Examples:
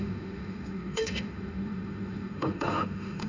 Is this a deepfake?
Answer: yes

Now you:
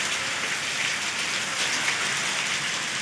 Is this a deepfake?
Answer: no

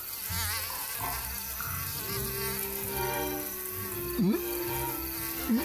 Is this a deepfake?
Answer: no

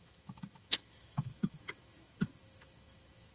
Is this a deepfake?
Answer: yes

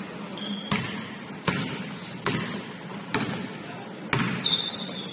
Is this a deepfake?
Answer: no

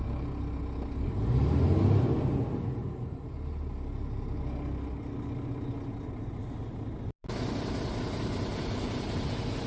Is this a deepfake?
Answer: no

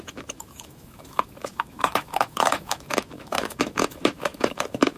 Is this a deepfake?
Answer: yes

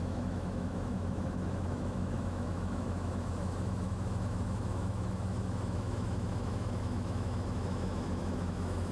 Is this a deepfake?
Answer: yes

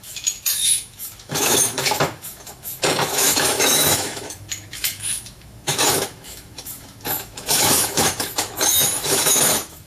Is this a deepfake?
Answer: yes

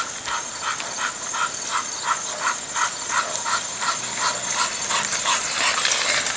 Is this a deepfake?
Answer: no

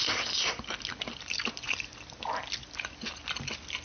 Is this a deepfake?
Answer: no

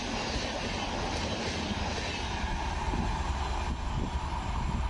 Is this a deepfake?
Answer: no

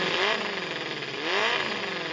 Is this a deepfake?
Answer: no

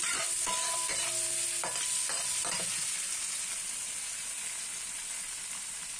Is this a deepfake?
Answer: no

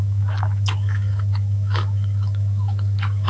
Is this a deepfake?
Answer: yes